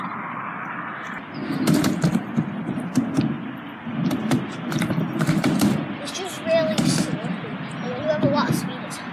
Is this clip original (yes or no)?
yes